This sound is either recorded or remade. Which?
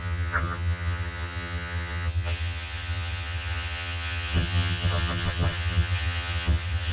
remade